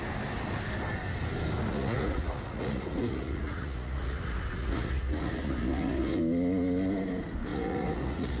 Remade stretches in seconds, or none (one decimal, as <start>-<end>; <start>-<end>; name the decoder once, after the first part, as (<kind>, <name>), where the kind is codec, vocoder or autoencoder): 1.7-6.2 (vocoder, Vocos); 7.5-8.4